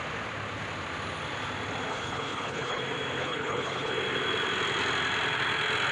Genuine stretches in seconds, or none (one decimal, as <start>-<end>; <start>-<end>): 0.0-1.9; 2.8-3.2; 3.9-5.9